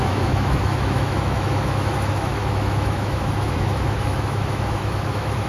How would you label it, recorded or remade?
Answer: remade